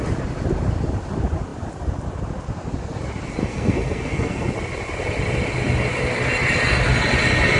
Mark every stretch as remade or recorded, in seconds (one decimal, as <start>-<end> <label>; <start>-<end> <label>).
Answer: 0.0-3.4 recorded; 3.4-4.5 remade; 4.5-7.6 recorded

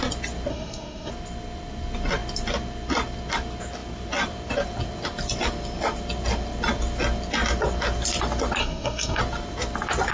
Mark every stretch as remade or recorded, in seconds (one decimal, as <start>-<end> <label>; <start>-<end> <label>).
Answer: 0.0-0.5 recorded; 0.5-1.1 remade; 1.1-8.6 recorded; 8.6-9.2 remade; 9.2-10.1 recorded

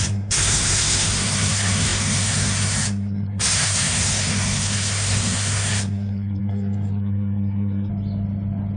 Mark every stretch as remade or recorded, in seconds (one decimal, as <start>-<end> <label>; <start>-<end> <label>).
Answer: 0.0-7.9 remade; 7.9-8.8 recorded

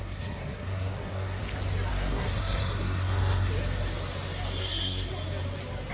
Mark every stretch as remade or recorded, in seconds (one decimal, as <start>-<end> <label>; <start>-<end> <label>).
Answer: 0.0-1.4 remade; 1.4-1.9 recorded; 1.9-3.5 remade; 3.5-4.6 recorded; 4.6-5.1 remade; 5.1-5.9 recorded